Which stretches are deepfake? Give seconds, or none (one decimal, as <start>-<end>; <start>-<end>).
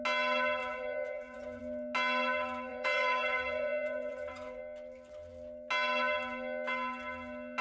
0.6-1.6; 2.7-4.6